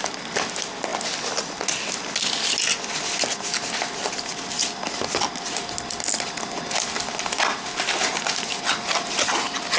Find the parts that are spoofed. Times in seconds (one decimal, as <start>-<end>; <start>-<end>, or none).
none